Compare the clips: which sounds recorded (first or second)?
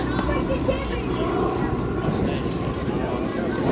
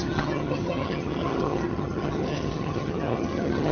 first